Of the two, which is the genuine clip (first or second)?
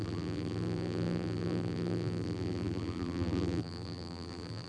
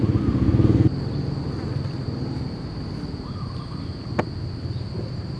second